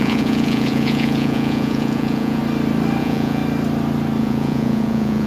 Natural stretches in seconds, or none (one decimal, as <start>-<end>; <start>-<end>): 2.4-3.0; 3.4-4.2